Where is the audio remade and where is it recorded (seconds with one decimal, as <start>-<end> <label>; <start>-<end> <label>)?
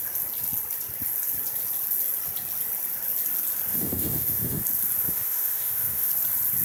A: 0.0-3.7 recorded; 3.7-4.6 remade; 4.6-5.0 recorded; 5.0-6.1 remade; 6.1-6.6 recorded